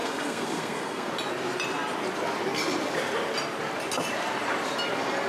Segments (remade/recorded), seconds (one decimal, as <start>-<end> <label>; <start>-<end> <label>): 0.0-1.1 remade; 1.1-5.3 recorded